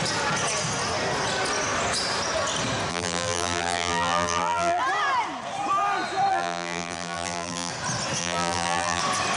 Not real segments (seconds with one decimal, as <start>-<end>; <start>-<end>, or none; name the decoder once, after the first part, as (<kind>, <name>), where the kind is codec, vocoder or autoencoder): 2.9-4.8 (vocoder, BigVGAN v2); 6.3-7.7; 8.2-9.0

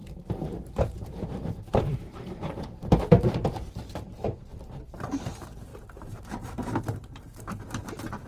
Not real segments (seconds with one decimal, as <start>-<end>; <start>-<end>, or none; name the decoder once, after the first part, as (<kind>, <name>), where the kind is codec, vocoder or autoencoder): 0.0-8.3 (vocoder, BigVGAN v2)

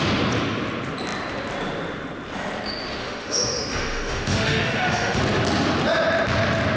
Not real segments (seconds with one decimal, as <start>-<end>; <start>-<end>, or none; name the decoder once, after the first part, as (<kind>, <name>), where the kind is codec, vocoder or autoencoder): 3.0-5.2 (autoencoder, DAC-VAE)

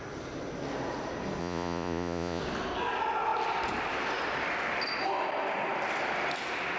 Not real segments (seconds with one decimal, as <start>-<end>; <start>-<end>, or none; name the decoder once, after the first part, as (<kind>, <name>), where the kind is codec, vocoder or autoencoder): 1.4-2.4 (vocoder, Vocos)

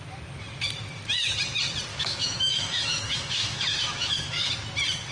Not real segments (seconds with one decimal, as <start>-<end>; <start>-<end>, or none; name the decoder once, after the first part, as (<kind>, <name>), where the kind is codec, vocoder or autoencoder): 1.9-4.5 (autoencoder, DAC-VAE)

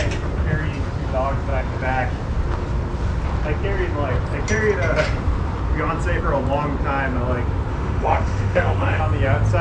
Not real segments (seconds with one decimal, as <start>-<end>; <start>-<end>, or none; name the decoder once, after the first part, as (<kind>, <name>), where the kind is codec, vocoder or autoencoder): 7.7-9.0 (autoencoder, DAC-VAE)

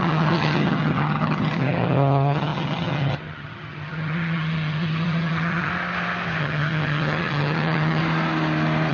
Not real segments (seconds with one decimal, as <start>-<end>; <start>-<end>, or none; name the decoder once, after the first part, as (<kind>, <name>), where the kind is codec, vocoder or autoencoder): 0.0-5.7 (vocoder, HiFi-GAN); 6.4-8.0